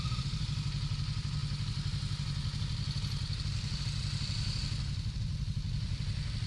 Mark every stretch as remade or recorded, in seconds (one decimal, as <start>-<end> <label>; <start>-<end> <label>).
0.0-6.5 recorded